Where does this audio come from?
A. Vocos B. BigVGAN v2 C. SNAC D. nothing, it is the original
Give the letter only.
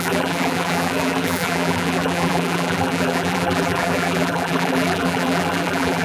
B